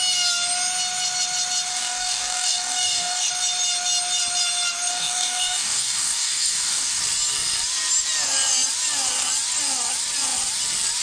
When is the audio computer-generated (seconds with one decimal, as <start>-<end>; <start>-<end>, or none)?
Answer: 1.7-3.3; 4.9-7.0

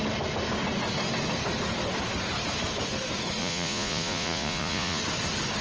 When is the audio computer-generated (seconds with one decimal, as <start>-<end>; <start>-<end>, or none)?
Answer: 3.4-5.0

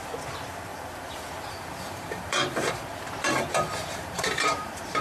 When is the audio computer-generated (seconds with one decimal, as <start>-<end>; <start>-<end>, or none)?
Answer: 0.0-5.0

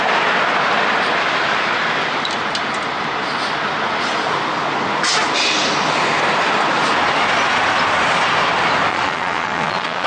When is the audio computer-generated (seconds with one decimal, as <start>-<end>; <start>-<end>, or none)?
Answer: 8.9-10.1